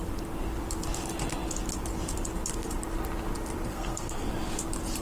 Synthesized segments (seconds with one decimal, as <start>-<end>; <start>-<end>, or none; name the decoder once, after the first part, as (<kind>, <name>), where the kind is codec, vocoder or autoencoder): 3.7-4.2 (codec, SNAC)